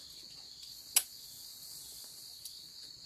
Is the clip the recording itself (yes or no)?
yes